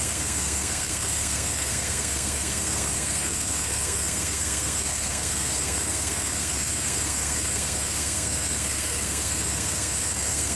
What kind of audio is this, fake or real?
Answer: fake